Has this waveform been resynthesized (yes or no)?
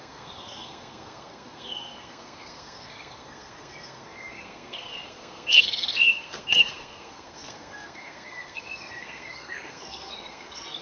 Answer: yes